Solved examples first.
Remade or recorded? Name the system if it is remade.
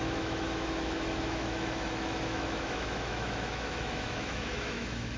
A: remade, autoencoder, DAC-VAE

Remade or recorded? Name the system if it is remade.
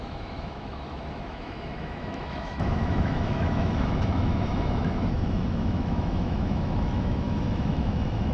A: remade, autoencoder, DAC-VAE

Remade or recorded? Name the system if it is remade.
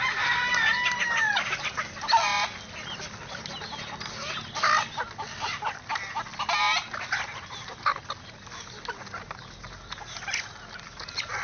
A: recorded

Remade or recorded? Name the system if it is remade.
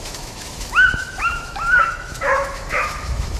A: remade, autoencoder, DAC-VAE